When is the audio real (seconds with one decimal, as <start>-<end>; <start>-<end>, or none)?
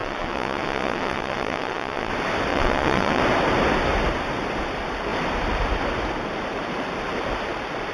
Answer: 2.1-2.5; 3.2-7.9